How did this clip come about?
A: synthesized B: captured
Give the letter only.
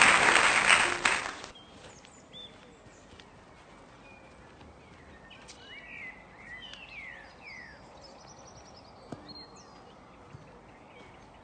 B